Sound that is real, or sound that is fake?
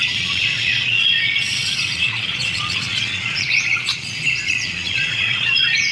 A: fake